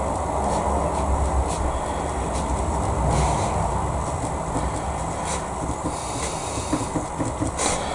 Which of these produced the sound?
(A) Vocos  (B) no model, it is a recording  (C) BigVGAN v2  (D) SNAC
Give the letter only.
B